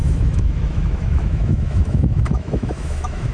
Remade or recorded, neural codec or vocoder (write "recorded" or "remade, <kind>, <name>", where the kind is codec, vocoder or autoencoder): remade, autoencoder, DAC-VAE